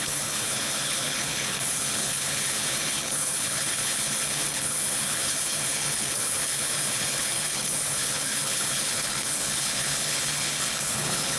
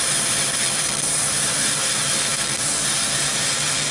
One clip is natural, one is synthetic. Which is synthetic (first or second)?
first